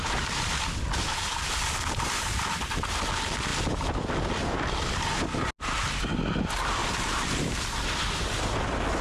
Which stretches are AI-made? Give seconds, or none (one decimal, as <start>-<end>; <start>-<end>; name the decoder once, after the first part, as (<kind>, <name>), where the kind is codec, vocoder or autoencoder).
none